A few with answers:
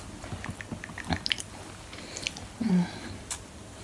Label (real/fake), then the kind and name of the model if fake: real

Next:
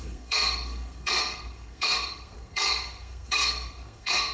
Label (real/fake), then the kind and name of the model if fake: fake, codec, SNAC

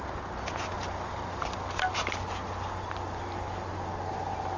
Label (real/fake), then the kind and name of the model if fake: real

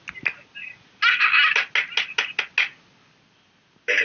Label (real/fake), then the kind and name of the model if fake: real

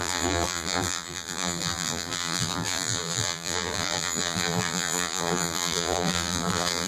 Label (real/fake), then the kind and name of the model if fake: fake, vocoder, BigVGAN v2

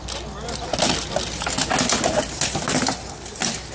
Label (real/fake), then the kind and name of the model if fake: real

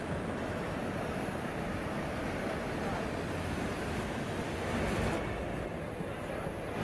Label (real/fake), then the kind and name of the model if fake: real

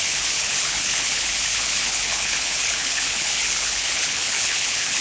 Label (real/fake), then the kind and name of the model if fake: fake, codec, HILCodec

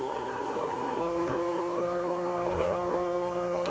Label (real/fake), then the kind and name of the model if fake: fake, codec, SNAC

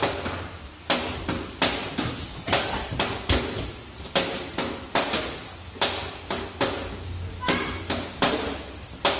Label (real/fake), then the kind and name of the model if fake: real